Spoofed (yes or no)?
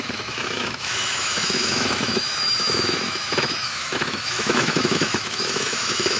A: yes